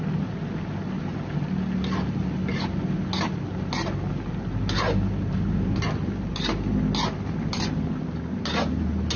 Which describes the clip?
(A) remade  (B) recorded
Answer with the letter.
B